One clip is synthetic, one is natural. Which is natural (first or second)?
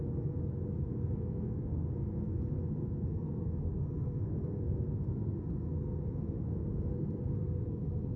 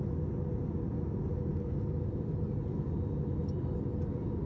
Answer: second